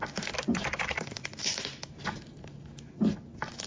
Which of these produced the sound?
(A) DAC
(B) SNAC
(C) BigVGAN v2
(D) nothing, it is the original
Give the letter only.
D